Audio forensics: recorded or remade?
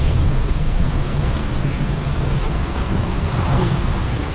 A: remade